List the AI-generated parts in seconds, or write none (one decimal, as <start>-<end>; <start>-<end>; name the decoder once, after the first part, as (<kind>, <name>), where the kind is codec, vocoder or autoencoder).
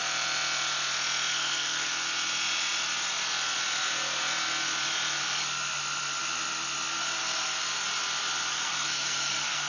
1.3-1.9 (codec, SNAC); 8.5-9.7